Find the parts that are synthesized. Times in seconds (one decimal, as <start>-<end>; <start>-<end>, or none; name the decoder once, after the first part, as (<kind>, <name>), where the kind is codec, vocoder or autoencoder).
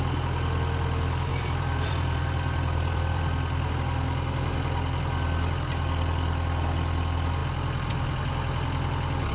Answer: 1.3-3.7 (vocoder, BigVGAN v2)